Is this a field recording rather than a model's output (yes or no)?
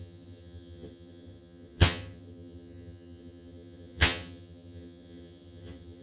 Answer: no